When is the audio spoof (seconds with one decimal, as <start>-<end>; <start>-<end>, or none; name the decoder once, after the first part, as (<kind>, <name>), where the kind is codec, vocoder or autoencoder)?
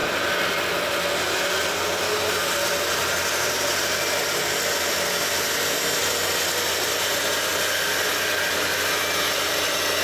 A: 6.0-7.1 (vocoder, BigVGAN v2); 7.5-9.6